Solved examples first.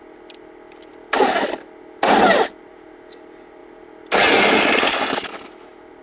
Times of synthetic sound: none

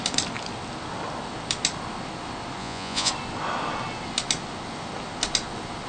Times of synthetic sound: 2.6-3.1

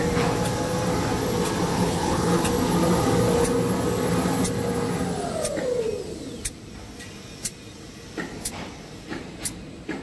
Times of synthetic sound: 1.7-2.4

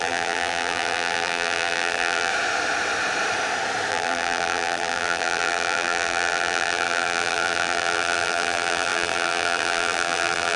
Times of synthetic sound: 0.0-2.3; 3.9-10.6

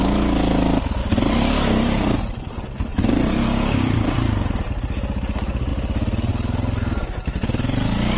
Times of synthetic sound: 1.0-2.1; 2.9-4.7